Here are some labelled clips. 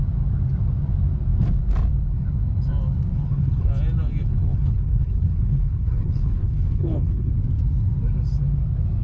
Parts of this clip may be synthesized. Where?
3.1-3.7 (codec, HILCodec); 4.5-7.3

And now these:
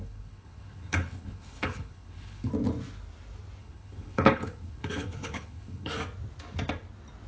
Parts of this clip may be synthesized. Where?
0.0-2.5 (codec, HILCodec); 3.6-5.9

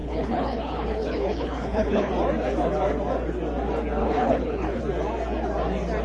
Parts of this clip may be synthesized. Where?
0.0-2.1 (codec, HILCodec); 4.0-4.8

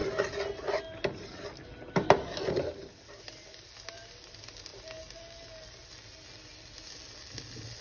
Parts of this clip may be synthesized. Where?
none

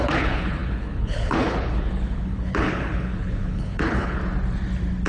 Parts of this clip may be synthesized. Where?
0.0-4.2 (codec, HILCodec)